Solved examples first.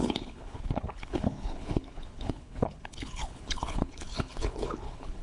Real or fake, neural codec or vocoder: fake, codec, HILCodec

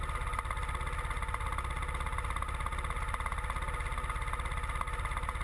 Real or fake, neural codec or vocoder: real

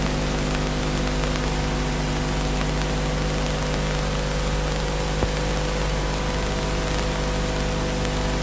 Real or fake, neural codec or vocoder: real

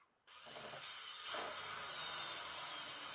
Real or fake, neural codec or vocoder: real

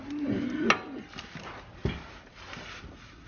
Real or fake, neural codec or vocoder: real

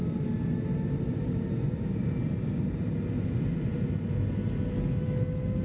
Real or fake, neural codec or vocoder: real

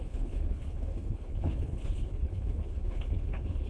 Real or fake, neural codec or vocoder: fake, codec, HILCodec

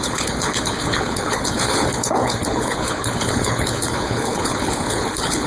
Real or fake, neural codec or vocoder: fake, codec, HILCodec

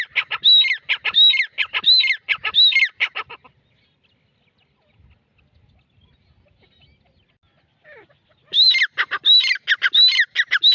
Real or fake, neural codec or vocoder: real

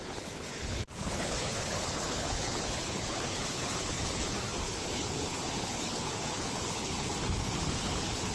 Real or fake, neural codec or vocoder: fake, codec, HILCodec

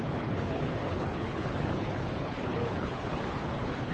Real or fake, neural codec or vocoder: fake, codec, HILCodec